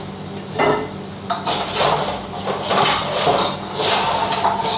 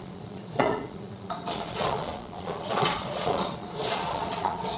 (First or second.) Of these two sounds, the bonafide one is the first